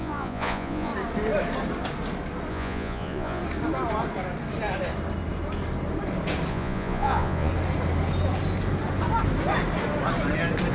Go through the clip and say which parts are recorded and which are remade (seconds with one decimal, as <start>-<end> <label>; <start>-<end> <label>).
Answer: 0.0-0.9 remade; 0.9-2.5 recorded; 2.5-3.4 remade; 3.4-6.5 recorded; 6.5-7.5 remade; 7.5-10.7 recorded